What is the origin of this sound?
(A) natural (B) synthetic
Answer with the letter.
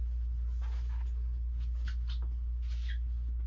A